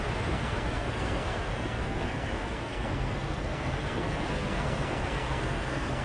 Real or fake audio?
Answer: fake